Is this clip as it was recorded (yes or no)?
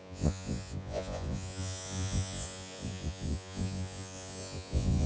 no